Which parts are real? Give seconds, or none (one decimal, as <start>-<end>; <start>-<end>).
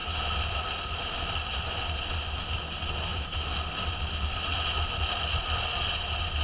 0.0-3.1; 5.8-6.4